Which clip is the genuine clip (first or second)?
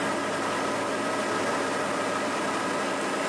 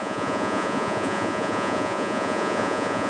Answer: first